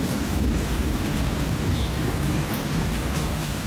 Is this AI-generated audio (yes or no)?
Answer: yes